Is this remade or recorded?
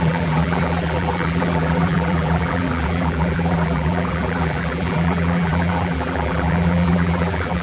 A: remade